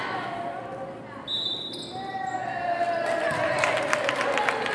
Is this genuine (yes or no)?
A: yes